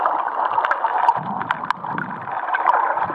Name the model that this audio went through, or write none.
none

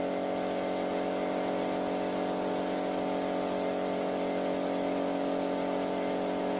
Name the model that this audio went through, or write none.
none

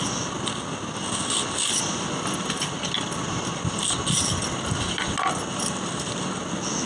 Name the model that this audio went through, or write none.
none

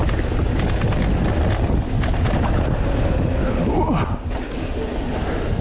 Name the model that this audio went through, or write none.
none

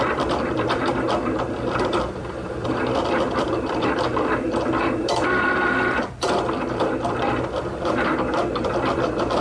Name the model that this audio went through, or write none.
vocoder, BigVGAN v2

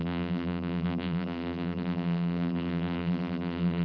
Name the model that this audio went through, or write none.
vocoder, BigVGAN v2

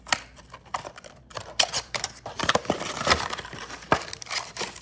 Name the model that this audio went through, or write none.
vocoder, BigVGAN v2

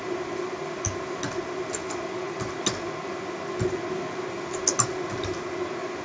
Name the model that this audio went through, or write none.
none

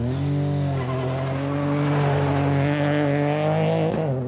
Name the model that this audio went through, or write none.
none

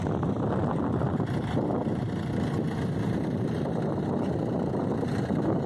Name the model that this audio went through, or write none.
vocoder, BigVGAN v2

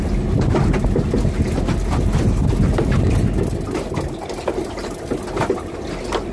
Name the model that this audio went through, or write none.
none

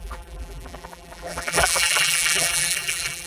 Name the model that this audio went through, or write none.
vocoder, BigVGAN v2